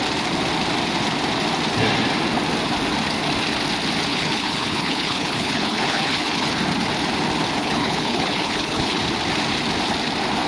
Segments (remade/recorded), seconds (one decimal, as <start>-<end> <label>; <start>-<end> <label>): 0.0-4.1 recorded; 4.1-6.5 remade; 6.5-7.6 recorded; 7.6-9.0 remade; 9.0-10.5 recorded